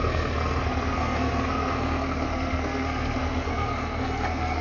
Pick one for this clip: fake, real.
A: fake